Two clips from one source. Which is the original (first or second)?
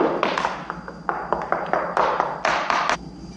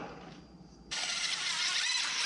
first